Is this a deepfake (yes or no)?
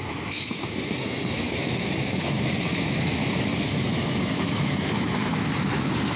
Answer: yes